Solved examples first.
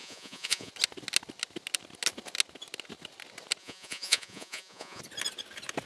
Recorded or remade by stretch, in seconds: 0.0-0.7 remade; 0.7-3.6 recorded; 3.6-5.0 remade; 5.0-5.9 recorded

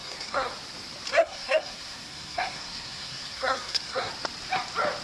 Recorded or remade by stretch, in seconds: 0.0-0.5 remade; 0.5-1.1 recorded; 1.1-4.1 remade; 4.1-5.0 recorded

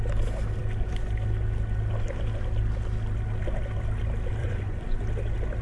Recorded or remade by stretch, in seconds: 0.0-4.4 recorded; 4.4-5.0 remade; 5.0-5.6 recorded

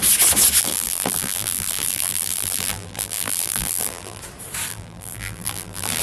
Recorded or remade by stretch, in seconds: 0.0-0.6 recorded; 0.6-4.2 remade; 4.2-4.7 recorded; 4.7-6.0 remade

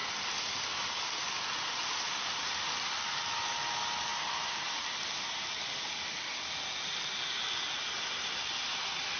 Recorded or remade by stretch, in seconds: 0.0-9.2 recorded

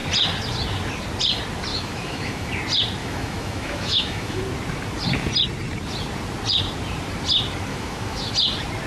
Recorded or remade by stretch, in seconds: 0.0-1.7 recorded; 1.7-2.5 remade; 2.5-3.0 recorded; 3.0-4.4 remade; 4.4-7.7 recorded; 7.7-8.3 remade; 8.3-8.9 recorded